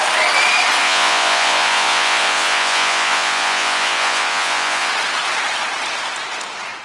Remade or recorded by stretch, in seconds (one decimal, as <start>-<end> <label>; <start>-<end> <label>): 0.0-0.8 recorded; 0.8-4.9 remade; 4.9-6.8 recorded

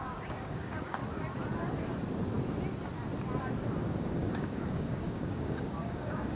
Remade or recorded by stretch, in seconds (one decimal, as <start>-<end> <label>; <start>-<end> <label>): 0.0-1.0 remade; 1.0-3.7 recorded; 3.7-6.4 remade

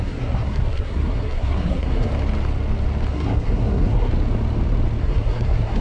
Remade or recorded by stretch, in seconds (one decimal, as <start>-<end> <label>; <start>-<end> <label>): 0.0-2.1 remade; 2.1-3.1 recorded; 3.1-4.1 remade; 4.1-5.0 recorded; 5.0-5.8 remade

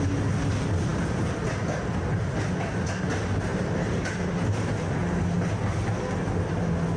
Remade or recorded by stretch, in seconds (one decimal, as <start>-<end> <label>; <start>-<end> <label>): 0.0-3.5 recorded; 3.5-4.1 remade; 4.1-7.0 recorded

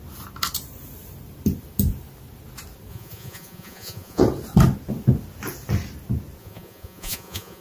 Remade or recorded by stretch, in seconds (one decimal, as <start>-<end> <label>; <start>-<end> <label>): 0.0-2.9 recorded; 2.9-4.2 remade; 4.2-6.4 recorded; 6.4-7.6 remade

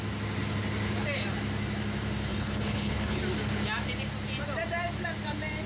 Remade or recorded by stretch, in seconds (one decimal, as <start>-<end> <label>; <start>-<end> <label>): 0.0-2.3 recorded; 2.3-3.2 remade; 3.2-5.7 recorded

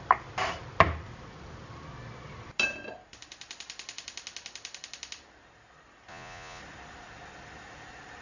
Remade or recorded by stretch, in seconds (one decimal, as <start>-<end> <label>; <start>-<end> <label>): 0.0-6.1 recorded; 6.1-6.6 remade; 6.6-8.2 recorded

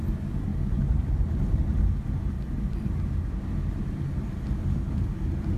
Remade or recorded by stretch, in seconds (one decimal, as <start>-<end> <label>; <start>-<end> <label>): 0.0-5.6 recorded